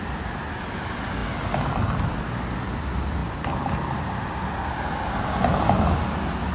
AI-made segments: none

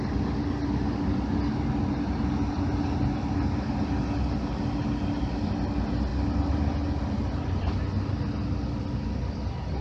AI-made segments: none

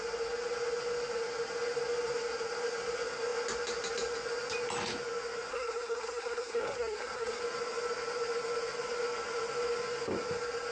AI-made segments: 5.5-7.4 (codec, SNAC)

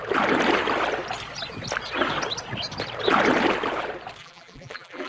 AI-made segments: 4.2-5.1 (vocoder, BigVGAN v2)

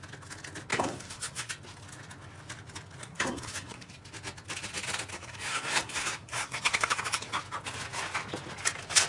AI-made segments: 0.7-1.5 (codec, SNAC); 3.0-3.9; 5.1-7.3

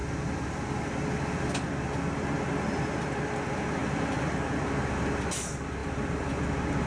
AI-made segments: 5.8-6.4 (vocoder, BigVGAN v2)

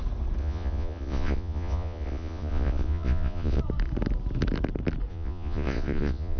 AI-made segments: 0.4-3.6 (vocoder, Vocos); 5.1-6.4

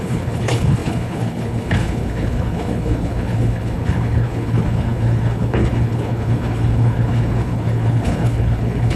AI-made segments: 0.0-9.0 (codec, HILCodec)